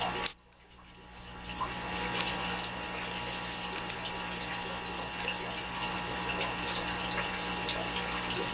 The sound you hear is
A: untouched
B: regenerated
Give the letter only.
A